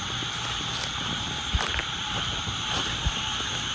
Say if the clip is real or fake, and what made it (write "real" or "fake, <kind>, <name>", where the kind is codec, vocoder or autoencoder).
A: real